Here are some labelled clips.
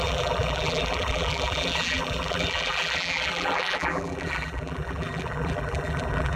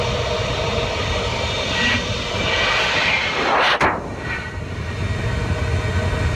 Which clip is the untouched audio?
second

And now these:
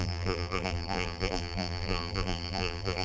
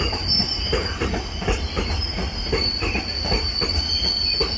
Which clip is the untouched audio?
second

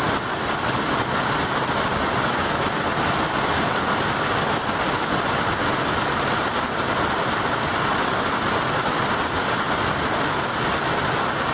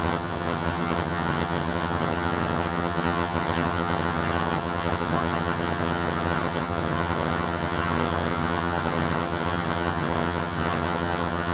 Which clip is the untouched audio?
first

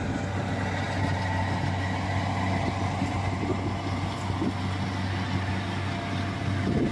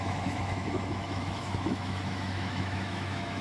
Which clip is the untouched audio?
first